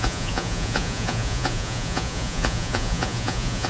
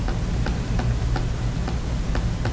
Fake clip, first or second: first